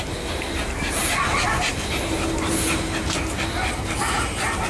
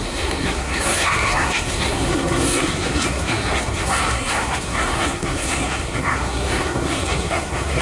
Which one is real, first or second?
first